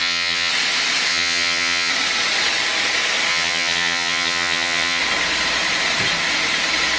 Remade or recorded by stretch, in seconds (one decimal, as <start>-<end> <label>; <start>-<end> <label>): 0.0-0.5 remade; 0.5-1.1 recorded; 1.1-1.9 remade; 1.9-3.3 recorded; 3.3-5.0 remade; 5.0-7.0 recorded